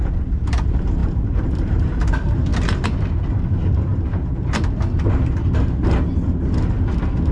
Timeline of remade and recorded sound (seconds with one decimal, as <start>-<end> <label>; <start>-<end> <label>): 0.0-2.5 remade; 2.5-3.5 recorded; 3.5-3.9 remade; 3.9-7.3 recorded